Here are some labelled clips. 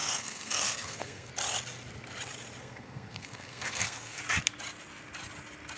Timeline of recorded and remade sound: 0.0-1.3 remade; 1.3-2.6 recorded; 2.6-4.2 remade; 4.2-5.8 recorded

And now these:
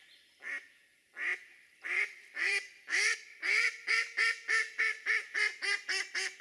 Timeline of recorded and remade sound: 0.0-1.3 recorded; 1.3-4.8 remade; 4.8-6.4 recorded

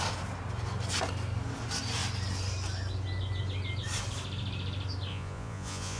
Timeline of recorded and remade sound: 0.0-5.1 recorded; 5.1-6.0 remade

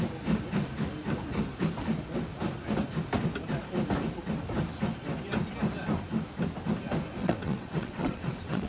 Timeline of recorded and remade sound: 0.0-7.2 recorded; 7.2-8.7 remade

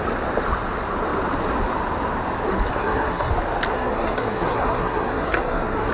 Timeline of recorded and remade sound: 0.0-2.7 recorded; 2.7-3.3 remade; 3.3-3.7 recorded; 3.7-5.9 remade